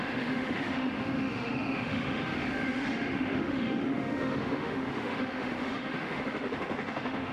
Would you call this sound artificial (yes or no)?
yes